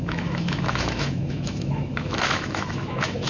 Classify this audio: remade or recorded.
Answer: remade